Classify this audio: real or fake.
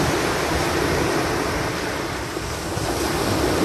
real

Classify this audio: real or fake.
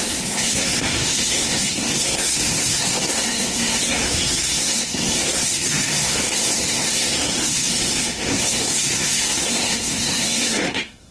fake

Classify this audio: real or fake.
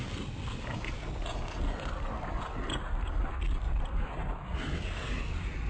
real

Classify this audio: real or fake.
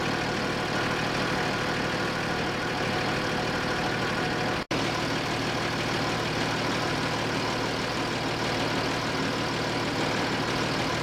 real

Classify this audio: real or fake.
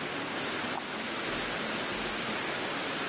real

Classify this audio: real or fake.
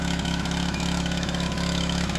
fake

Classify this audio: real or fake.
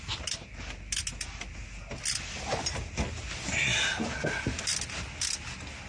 real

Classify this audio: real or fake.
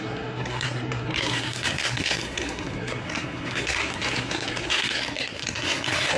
fake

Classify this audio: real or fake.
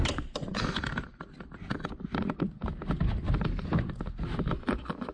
real